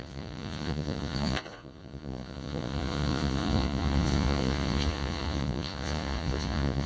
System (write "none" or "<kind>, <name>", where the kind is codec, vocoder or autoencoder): vocoder, Vocos